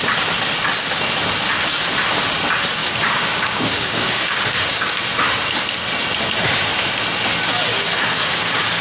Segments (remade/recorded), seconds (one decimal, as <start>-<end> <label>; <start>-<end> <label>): 0.0-2.8 recorded; 2.8-4.9 remade; 4.9-7.7 recorded; 7.7-8.8 remade